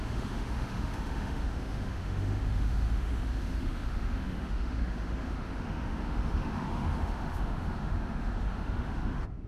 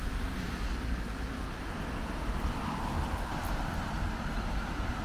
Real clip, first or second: second